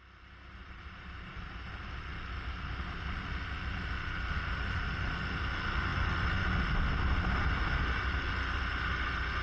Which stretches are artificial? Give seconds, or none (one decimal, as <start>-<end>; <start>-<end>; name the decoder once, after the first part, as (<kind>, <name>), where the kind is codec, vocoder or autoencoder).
0.6-1.3 (vocoder, BigVGAN v2)

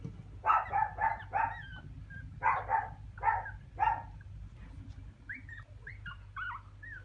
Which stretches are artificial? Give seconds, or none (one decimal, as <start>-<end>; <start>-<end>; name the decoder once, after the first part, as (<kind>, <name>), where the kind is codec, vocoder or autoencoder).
none

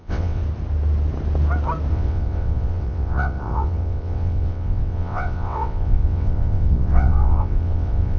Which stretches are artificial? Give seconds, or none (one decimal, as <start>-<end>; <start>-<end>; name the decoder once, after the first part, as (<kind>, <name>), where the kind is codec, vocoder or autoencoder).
0.0-0.4 (vocoder, WaveNeXt); 1.9-8.2

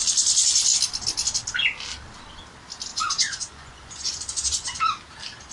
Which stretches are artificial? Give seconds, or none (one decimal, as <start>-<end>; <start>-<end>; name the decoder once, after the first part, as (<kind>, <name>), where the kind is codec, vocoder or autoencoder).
2.9-4.8 (vocoder, Vocos)

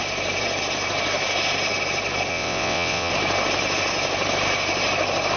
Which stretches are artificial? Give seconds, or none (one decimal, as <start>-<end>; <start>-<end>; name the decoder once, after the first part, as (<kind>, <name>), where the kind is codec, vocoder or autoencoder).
2.3-3.1 (vocoder, WaveNeXt)

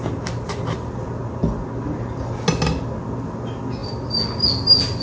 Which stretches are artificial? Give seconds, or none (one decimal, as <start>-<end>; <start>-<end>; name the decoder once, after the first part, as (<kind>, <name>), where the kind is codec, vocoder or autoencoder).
none

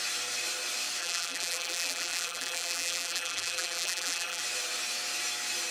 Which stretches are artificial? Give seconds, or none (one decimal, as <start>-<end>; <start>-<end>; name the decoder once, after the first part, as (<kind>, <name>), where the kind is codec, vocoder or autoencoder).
1.0-4.4 (vocoder, BigVGAN v2)

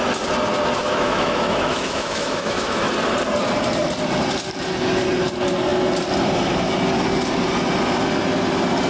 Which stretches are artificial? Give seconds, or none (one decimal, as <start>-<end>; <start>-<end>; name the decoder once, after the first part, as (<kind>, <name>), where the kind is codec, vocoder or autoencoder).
0.8-2.9 (autoencoder, DAC-VAE)